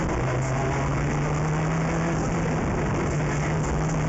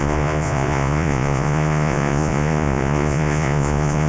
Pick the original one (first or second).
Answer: first